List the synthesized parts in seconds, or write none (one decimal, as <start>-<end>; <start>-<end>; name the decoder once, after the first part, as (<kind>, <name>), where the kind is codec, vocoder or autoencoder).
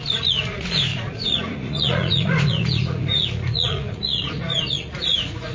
0.0-5.5 (vocoder, Vocos)